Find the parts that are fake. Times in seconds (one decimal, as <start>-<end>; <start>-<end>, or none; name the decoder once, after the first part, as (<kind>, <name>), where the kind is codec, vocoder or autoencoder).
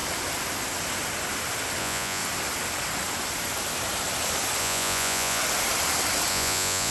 1.8-2.2 (vocoder, Vocos); 4.6-5.4; 6.3-6.9